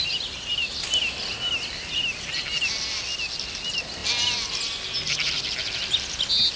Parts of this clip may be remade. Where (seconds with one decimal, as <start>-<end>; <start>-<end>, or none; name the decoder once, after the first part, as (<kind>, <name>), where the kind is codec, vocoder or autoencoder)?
none